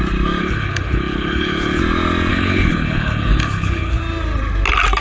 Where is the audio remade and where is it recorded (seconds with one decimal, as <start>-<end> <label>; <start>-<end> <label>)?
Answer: 0.0-0.4 recorded; 0.4-1.8 remade; 1.8-2.3 recorded; 2.3-4.0 remade; 4.0-5.0 recorded